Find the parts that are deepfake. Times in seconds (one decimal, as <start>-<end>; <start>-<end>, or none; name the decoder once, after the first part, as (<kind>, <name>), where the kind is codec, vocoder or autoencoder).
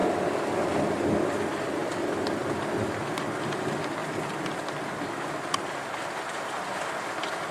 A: none